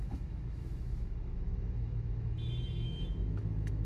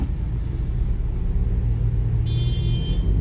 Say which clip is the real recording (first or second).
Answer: second